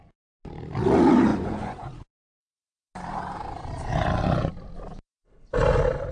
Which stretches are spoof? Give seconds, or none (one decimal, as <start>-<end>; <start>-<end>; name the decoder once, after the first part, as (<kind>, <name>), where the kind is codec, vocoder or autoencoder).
1.3-2.4 (vocoder, Vocos)